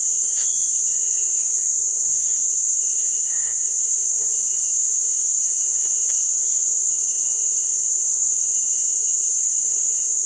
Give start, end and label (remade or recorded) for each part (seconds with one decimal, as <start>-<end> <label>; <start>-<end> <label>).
0.0-10.3 remade